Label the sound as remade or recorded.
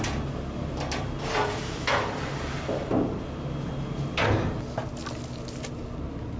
recorded